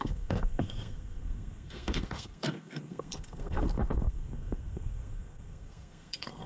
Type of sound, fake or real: fake